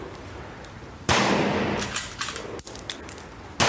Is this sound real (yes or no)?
yes